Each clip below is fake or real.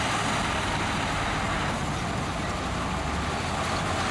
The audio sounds real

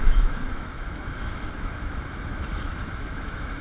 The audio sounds fake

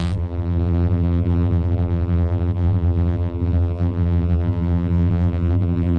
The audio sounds fake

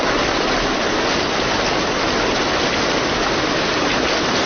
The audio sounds real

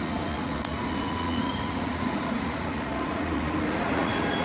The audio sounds fake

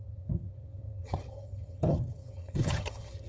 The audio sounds fake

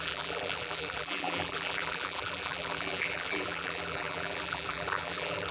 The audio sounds fake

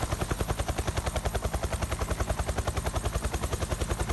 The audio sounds real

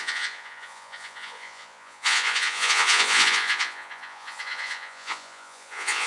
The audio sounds fake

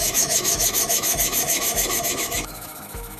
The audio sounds fake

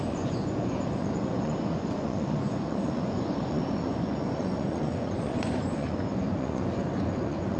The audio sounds fake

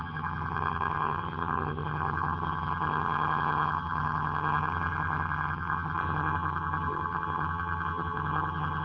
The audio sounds fake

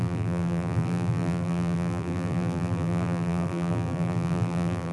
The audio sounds fake